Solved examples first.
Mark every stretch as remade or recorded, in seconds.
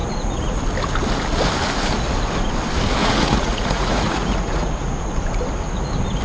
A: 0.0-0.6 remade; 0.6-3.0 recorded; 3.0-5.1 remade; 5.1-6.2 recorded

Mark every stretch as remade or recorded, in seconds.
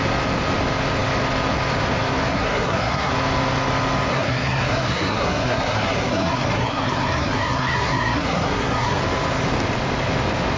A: 0.0-2.3 recorded; 2.3-3.1 remade; 3.1-4.1 recorded; 4.1-9.0 remade; 9.0-10.6 recorded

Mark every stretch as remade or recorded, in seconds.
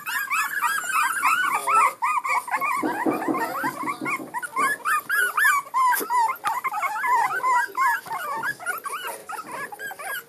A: 0.0-1.6 remade; 1.6-2.6 recorded; 2.6-4.5 remade; 4.5-8.5 recorded; 8.5-9.2 remade; 9.2-10.3 recorded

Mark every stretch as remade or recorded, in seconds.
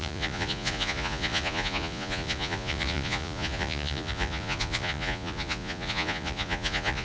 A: 0.0-7.0 remade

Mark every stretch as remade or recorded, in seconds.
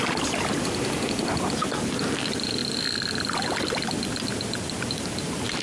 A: 0.0-5.6 recorded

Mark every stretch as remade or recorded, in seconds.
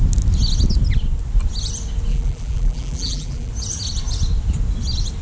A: 0.0-2.1 recorded; 2.1-3.5 remade; 3.5-5.2 recorded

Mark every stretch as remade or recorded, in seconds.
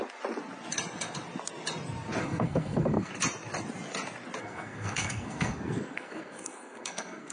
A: 0.0-2.2 recorded; 2.2-3.1 remade; 3.1-4.4 recorded; 4.4-7.3 remade